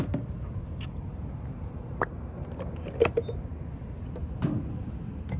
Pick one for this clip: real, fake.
real